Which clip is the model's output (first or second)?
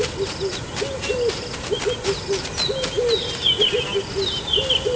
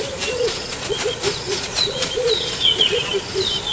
second